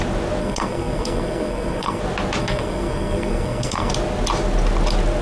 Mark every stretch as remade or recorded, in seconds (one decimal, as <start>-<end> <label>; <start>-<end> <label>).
0.0-0.4 recorded; 0.4-2.0 remade; 2.0-2.4 recorded; 2.4-3.9 remade; 3.9-5.2 recorded